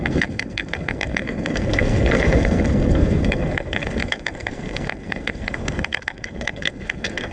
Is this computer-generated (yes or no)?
yes